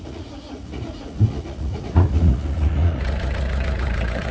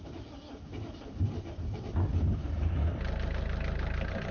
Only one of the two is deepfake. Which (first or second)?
first